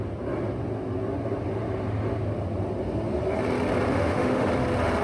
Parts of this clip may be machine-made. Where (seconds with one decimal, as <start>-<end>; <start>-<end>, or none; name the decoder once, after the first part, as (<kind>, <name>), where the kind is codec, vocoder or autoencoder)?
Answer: 3.9-4.5 (autoencoder, DAC-VAE)